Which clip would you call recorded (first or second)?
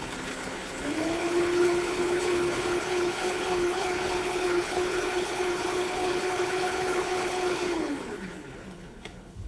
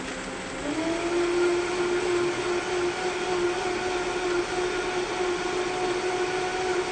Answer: second